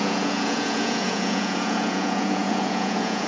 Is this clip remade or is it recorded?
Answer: remade